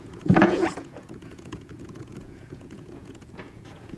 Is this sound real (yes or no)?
no